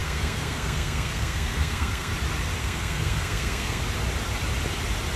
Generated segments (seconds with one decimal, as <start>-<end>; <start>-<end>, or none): 0.0-2.1; 2.6-3.8